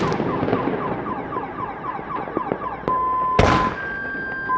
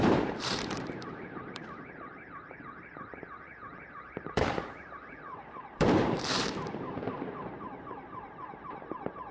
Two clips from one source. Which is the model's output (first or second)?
second